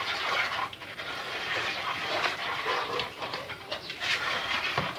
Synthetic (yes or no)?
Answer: yes